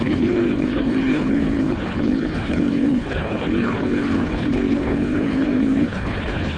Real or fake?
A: fake